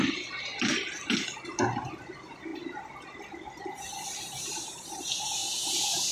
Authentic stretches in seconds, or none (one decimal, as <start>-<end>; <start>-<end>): 0.5-1.3; 2.5-3.6; 5.4-6.1